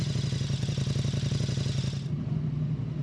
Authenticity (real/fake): real